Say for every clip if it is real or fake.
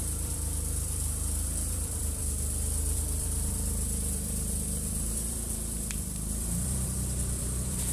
fake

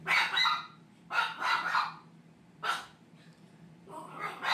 real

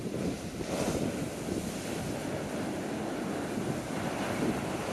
real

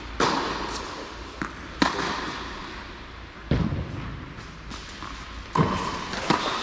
real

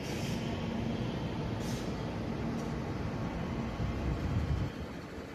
real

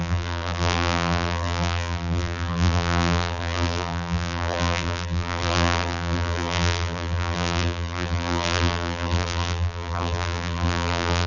fake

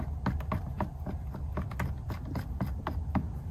real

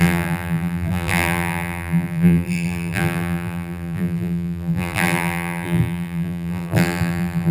fake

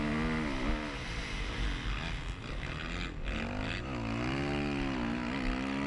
real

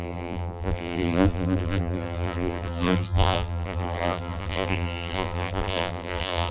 fake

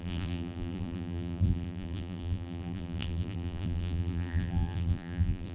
fake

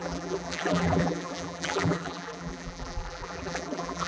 fake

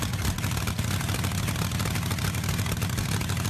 real